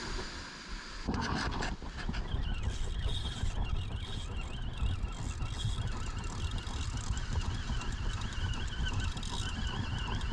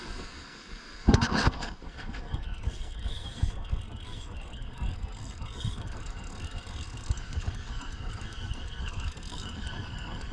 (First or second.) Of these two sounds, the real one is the first